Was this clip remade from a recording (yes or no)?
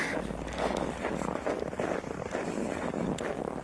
no